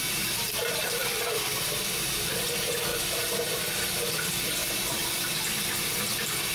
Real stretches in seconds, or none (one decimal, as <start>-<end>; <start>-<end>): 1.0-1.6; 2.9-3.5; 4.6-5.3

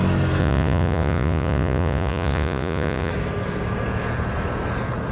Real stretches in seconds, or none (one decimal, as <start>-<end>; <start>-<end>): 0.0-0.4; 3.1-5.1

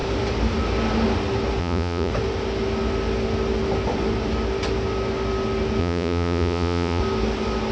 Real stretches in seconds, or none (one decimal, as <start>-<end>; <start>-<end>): 0.0-1.6; 2.1-5.8; 7.0-7.7

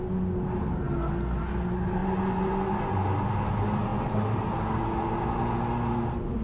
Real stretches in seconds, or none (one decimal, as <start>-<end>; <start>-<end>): 0.0-6.4